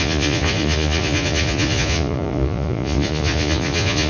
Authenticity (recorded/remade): remade